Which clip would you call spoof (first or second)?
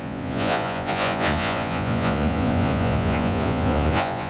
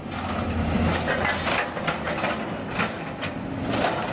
first